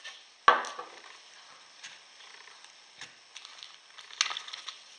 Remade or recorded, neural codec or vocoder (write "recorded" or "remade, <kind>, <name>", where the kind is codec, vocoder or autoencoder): recorded